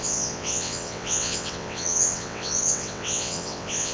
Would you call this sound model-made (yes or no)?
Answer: yes